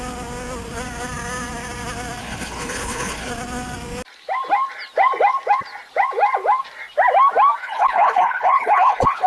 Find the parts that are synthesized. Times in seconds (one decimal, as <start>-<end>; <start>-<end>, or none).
2.2-3.3; 7.6-9.3